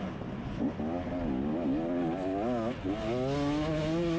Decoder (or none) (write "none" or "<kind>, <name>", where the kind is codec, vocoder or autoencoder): none